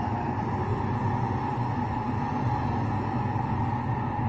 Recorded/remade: recorded